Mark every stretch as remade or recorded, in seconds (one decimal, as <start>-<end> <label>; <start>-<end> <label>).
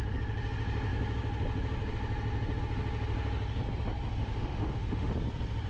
0.0-4.2 recorded; 4.2-5.1 remade; 5.1-5.7 recorded